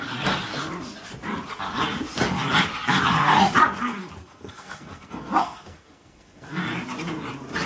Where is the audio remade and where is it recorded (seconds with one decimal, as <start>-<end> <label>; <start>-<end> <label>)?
0.0-4.2 recorded; 4.2-6.6 remade; 6.6-7.7 recorded